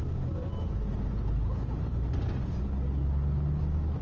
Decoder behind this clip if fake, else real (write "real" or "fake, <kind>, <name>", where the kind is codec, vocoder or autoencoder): real